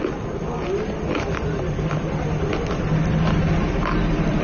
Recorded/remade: recorded